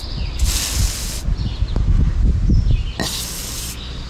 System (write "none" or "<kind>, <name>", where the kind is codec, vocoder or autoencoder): none